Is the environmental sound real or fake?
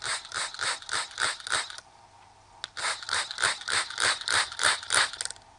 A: real